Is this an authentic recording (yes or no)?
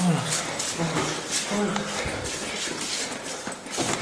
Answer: yes